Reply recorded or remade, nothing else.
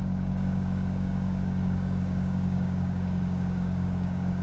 remade